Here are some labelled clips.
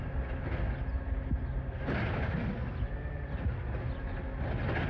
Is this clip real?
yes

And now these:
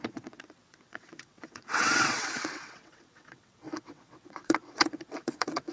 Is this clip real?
no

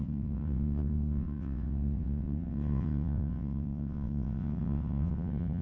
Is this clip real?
no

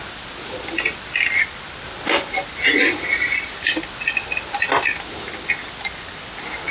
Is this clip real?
yes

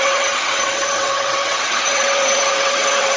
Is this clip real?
no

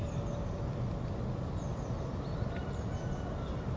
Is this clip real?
yes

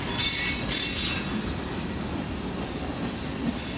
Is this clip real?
yes